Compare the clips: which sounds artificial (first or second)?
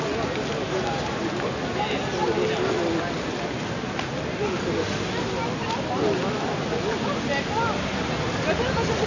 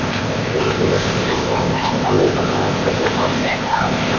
second